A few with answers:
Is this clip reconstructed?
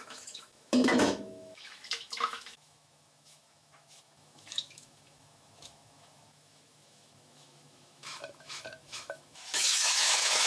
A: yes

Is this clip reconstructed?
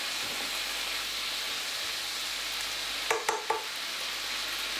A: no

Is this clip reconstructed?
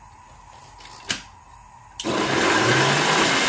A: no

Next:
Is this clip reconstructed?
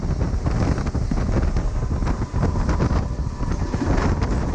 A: no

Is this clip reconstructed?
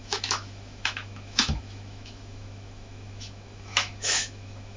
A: yes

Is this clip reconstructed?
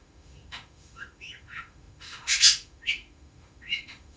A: yes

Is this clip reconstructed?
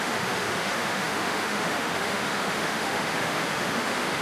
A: yes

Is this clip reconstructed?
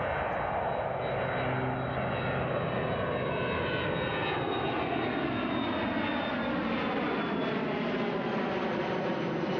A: no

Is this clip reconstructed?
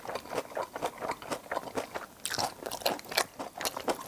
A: no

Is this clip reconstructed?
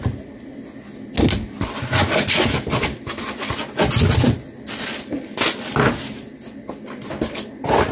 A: no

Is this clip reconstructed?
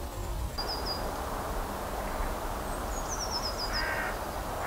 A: no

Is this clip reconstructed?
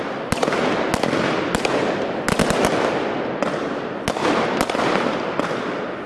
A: no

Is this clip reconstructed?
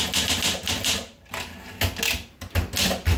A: no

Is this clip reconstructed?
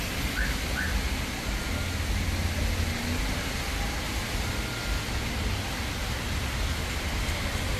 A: no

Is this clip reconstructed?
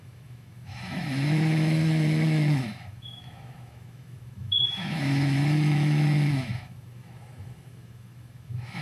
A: yes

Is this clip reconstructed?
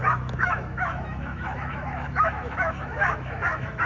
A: yes